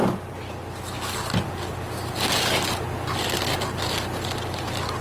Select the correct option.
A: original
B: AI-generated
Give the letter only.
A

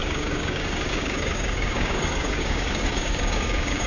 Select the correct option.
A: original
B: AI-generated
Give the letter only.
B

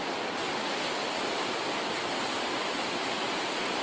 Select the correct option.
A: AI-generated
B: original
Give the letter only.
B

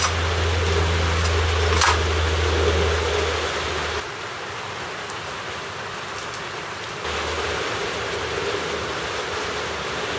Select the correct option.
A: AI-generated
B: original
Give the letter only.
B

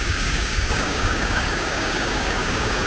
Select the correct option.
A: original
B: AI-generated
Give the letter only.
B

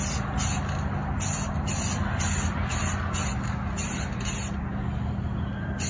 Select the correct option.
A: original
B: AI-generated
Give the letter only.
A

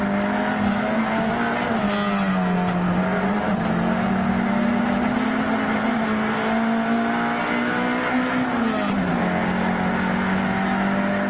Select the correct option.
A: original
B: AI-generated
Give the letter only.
A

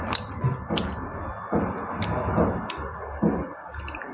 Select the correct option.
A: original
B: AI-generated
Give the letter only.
A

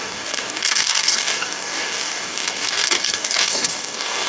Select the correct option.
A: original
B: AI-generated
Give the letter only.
B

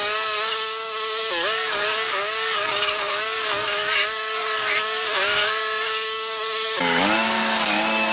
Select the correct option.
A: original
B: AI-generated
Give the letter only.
B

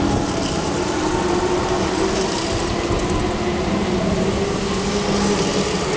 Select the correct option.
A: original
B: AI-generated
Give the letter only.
A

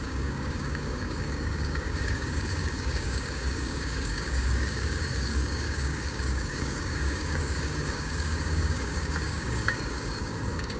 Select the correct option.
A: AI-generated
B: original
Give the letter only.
A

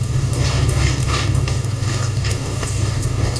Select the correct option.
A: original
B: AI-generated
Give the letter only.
B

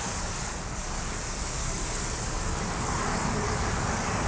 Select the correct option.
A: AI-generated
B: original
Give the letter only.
A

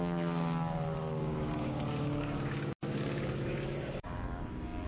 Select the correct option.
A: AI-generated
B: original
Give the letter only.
A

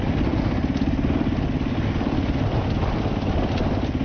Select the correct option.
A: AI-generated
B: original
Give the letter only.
B